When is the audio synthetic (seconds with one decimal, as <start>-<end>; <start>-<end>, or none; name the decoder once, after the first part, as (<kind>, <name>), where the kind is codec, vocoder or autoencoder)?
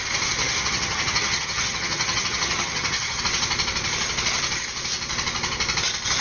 0.4-3.2 (vocoder, HiFi-GAN)